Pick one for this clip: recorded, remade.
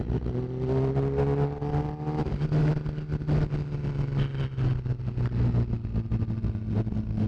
recorded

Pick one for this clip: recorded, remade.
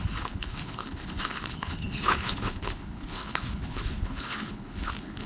remade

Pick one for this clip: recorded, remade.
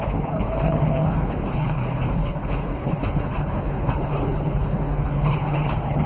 remade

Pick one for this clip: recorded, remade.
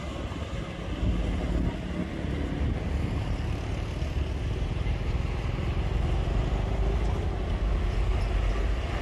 recorded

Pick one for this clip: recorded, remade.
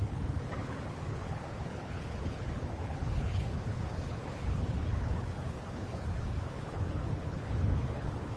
remade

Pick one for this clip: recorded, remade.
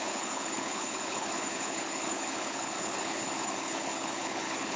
remade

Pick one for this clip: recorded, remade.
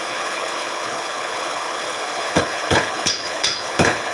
remade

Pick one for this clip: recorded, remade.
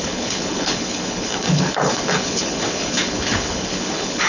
remade